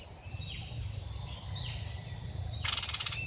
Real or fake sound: real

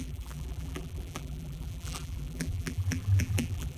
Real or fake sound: fake